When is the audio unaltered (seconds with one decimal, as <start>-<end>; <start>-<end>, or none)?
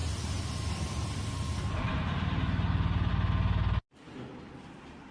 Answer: 3.1-5.1